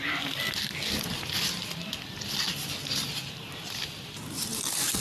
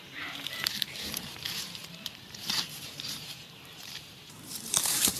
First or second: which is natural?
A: first